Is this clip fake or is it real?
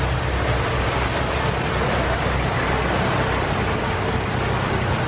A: real